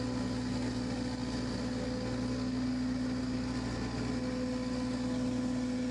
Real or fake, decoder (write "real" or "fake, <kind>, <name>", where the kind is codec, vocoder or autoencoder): real